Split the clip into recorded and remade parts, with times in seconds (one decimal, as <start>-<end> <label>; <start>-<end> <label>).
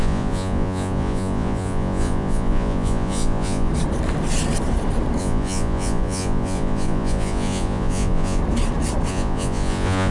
0.0-3.7 remade; 3.7-5.2 recorded; 5.2-8.4 remade; 8.4-9.1 recorded; 9.1-10.1 remade